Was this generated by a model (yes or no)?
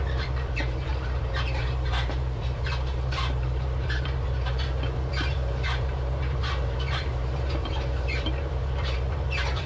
yes